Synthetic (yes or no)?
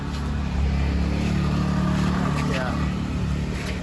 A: no